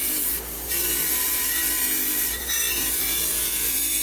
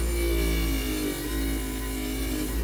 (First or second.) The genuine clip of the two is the second